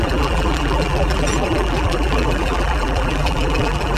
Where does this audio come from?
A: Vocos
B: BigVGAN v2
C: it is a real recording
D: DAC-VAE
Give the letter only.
B